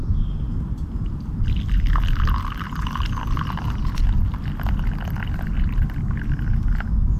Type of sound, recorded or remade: recorded